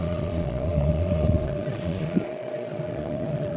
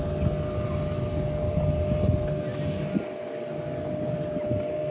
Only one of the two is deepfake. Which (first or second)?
first